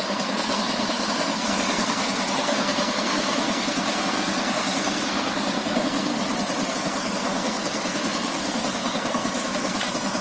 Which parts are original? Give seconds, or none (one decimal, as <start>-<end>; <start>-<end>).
6.1-6.7